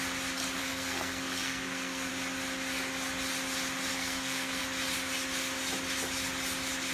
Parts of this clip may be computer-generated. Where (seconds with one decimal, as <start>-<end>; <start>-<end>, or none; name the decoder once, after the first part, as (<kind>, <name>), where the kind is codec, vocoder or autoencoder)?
0.6-2.1 (codec, SNAC); 3.9-4.6

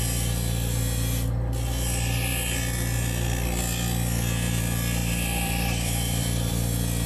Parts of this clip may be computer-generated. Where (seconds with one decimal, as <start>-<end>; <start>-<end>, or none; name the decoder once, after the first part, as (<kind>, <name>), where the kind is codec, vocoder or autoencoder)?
5.0-6.5 (vocoder, BigVGAN v2)

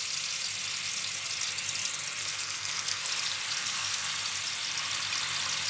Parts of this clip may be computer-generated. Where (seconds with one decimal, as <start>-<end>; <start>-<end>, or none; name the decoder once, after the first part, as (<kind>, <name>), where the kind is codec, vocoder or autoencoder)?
2.2-3.1 (codec, SNAC); 3.6-4.1

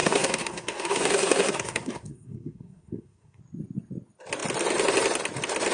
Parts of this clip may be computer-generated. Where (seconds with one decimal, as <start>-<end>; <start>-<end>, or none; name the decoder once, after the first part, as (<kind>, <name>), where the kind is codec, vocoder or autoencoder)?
0.0-3.4 (codec, SNAC)

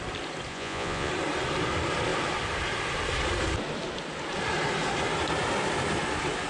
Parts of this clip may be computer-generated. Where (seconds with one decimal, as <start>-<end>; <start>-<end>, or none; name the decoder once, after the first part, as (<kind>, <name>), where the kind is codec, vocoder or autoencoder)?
0.5-1.1 (vocoder, Vocos)